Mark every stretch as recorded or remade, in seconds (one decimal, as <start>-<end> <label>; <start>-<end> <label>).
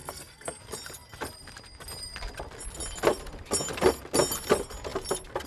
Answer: 0.0-0.6 remade; 0.6-5.5 recorded